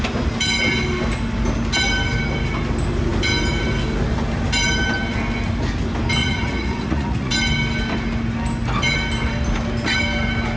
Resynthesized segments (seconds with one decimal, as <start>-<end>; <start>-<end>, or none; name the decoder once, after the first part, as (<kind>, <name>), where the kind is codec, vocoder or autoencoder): 6.2-7.3 (vocoder, Vocos)